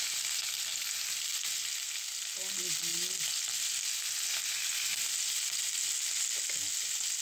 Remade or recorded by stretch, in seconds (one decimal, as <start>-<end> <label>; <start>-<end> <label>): 0.0-7.2 recorded